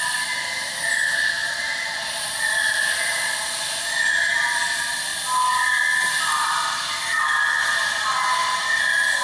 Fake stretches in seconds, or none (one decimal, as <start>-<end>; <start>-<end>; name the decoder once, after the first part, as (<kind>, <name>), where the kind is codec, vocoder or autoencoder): 1.4-2.1 (vocoder, BigVGAN v2); 8.4-9.2